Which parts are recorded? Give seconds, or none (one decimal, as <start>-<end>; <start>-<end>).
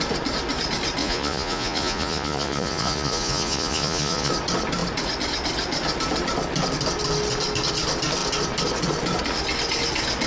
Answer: 0.0-1.0; 4.3-10.3